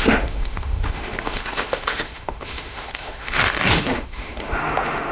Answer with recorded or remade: remade